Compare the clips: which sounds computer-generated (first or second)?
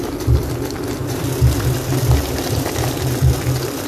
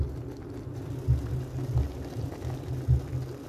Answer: first